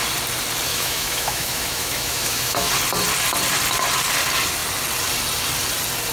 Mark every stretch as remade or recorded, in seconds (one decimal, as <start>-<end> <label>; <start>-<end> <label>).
0.0-0.7 recorded; 0.7-2.7 remade; 2.7-6.1 recorded